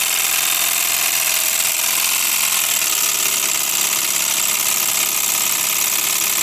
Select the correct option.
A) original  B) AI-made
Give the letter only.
A